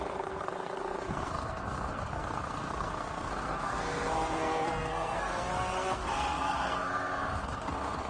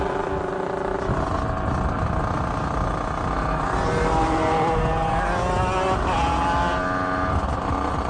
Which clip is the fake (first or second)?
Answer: first